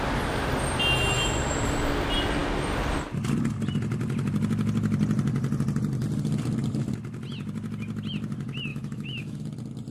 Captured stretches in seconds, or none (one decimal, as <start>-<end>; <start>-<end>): 0.0-8.7; 9.4-9.9